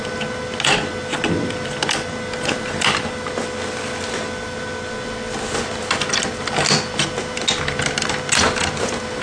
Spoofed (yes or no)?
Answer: no